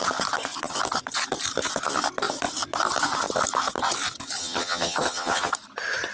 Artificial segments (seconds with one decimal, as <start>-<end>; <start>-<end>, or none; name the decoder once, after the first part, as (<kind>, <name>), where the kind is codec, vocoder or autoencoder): 4.4-5.5 (vocoder, HiFi-GAN)